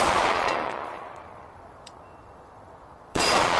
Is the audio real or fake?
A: fake